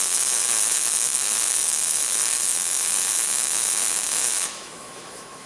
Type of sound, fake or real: fake